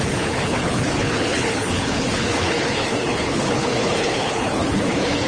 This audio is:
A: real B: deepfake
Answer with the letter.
B